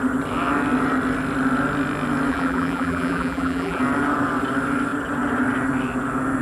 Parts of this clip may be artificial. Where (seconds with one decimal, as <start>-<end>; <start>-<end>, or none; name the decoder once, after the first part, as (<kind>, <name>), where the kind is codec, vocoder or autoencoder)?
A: 2.3-3.8 (vocoder, BigVGAN v2)